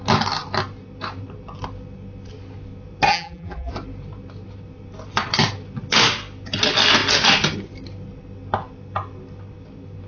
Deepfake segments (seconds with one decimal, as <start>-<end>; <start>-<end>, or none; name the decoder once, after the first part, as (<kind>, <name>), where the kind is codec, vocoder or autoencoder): 3.1-3.7 (vocoder, BigVGAN v2)